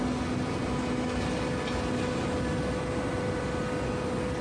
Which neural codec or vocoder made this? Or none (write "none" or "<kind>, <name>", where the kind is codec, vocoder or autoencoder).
none